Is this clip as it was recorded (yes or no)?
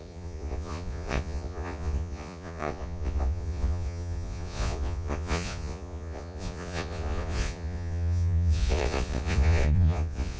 no